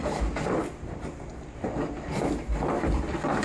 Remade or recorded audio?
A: recorded